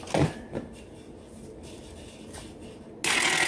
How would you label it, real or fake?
real